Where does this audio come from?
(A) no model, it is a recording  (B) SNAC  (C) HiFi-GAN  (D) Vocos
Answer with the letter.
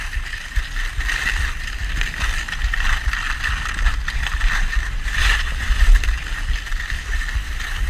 A